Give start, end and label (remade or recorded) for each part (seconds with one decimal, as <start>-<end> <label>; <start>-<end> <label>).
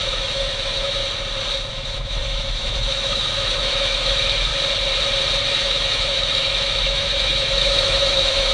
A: 0.0-1.0 remade; 1.0-1.7 recorded; 1.7-4.5 remade; 4.5-5.4 recorded; 5.4-8.5 remade